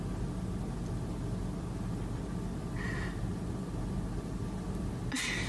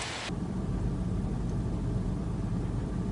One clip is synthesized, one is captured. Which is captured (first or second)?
first